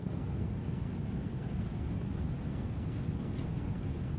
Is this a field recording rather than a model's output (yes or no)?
no